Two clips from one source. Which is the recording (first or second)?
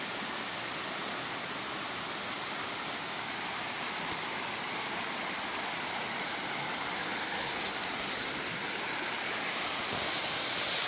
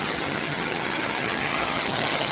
first